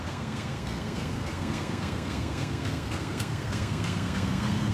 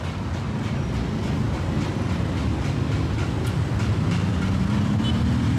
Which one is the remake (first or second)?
first